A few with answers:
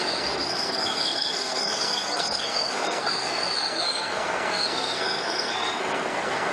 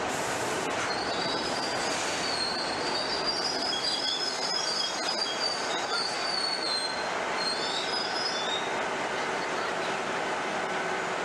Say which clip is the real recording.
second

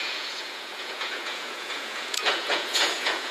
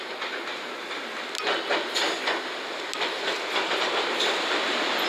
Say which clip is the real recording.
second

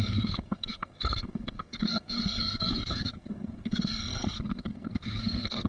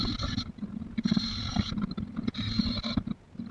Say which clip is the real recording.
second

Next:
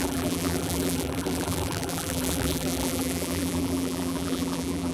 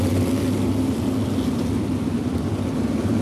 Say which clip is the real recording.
second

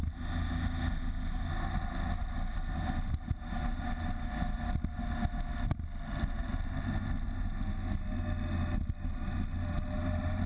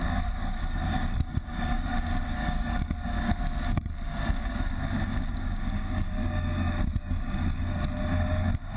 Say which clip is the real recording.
first